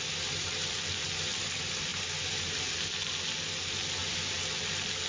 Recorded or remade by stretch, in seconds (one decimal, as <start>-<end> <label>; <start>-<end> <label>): 0.0-5.1 recorded